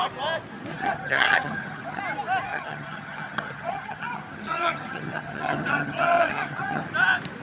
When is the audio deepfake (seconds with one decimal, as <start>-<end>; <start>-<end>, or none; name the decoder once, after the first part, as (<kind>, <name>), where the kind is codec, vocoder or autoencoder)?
0.7-2.0 (vocoder, HiFi-GAN); 2.5-6.9